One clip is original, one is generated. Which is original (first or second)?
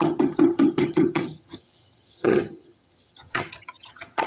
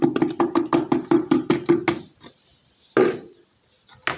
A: second